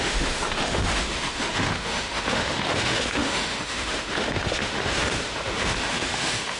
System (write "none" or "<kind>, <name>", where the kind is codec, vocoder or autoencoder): autoencoder, DAC-VAE